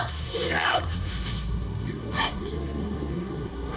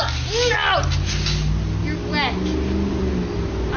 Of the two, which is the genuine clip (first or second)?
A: second